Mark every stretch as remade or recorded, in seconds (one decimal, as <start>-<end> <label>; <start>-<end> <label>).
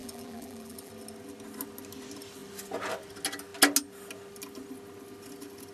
0.0-0.9 remade; 0.9-5.7 recorded